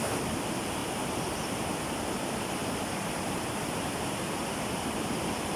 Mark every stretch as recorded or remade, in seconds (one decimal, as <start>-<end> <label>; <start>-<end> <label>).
0.0-2.6 remade; 2.6-3.2 recorded; 3.2-5.6 remade